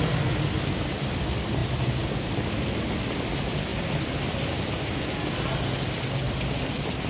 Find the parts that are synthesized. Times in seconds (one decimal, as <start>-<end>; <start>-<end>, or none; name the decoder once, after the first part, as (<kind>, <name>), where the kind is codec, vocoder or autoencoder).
none